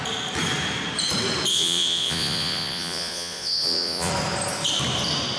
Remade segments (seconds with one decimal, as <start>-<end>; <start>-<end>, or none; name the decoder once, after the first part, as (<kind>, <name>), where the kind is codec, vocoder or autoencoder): 1.5-4.1 (vocoder, Vocos)